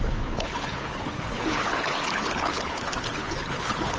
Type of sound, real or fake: fake